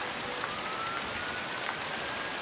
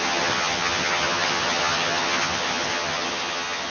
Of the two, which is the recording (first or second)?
first